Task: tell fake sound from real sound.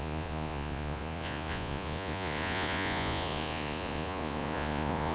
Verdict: fake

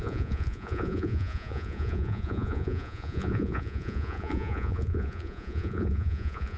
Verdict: fake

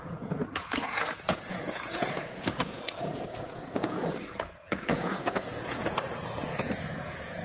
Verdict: fake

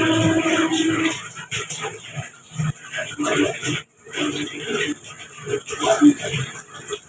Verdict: real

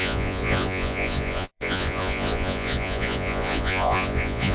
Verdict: fake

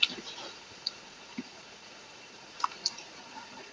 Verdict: fake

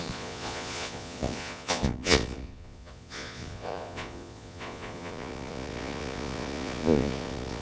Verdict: fake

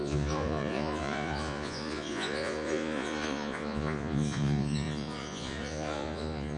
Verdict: fake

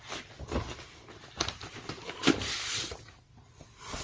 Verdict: real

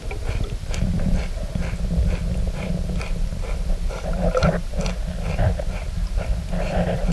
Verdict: real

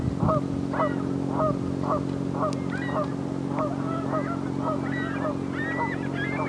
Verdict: real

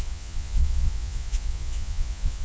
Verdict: fake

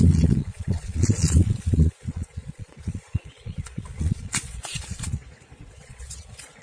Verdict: fake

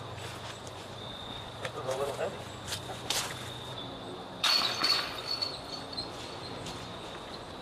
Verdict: fake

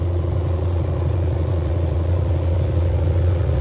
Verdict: fake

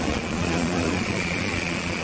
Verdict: fake